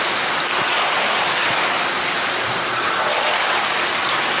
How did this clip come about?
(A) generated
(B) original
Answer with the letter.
B